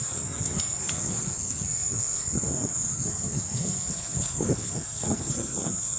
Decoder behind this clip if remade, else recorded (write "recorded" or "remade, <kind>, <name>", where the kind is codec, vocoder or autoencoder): remade, codec, SNAC